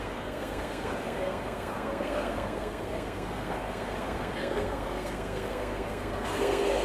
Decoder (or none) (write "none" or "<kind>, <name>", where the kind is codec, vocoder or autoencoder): codec, SNAC